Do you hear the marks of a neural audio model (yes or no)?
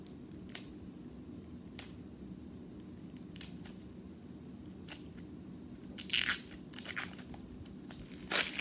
no